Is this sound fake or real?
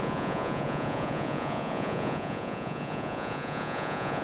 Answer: fake